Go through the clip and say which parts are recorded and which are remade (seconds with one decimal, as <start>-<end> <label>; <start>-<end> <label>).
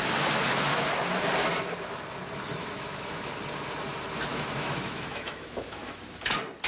0.0-2.6 recorded; 2.6-3.3 remade; 3.3-4.3 recorded; 4.3-6.0 remade; 6.0-6.7 recorded